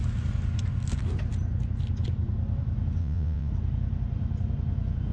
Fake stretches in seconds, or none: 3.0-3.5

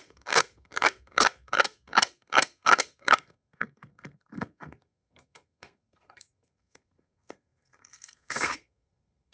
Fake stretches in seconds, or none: 0.0-9.3

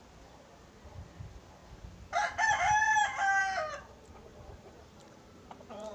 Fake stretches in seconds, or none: 4.3-5.9